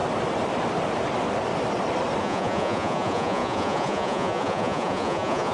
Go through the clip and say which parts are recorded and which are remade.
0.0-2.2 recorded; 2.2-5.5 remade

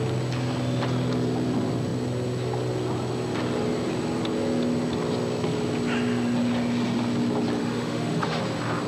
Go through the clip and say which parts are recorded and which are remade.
0.0-7.6 recorded; 7.6-8.4 remade; 8.4-8.9 recorded

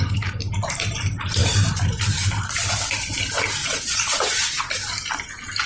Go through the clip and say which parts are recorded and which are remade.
0.0-3.6 recorded; 3.6-4.7 remade; 4.7-5.7 recorded

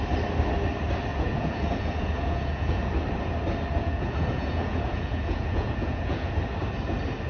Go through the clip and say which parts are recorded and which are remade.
0.0-1.1 recorded; 1.1-2.9 remade; 2.9-3.8 recorded; 3.8-6.3 remade; 6.3-7.3 recorded

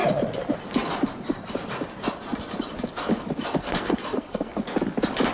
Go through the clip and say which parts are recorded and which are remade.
0.0-3.6 recorded; 3.6-4.6 remade; 4.6-5.3 recorded

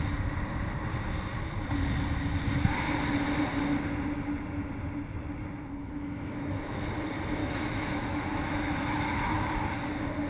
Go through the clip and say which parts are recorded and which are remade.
0.0-5.8 recorded; 5.8-6.8 remade; 6.8-7.4 recorded; 7.4-9.5 remade; 9.5-10.3 recorded

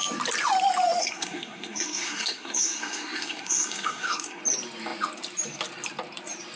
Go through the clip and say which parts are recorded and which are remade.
0.0-1.0 recorded; 1.0-4.4 remade; 4.4-6.6 recorded